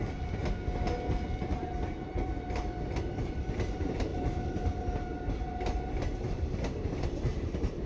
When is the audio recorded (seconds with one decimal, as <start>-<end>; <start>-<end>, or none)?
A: 0.4-3.4; 4.1-5.9